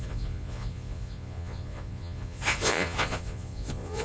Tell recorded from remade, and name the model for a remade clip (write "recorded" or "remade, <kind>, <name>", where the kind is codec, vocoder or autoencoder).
remade, vocoder, Vocos